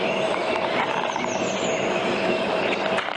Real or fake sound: real